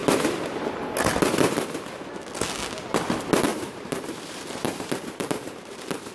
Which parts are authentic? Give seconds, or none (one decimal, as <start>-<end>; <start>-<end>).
0.0-3.5